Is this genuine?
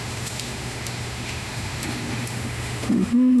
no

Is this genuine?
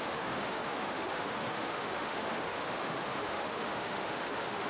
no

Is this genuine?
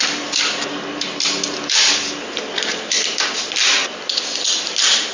yes